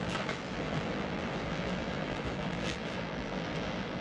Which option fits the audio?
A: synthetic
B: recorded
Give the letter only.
A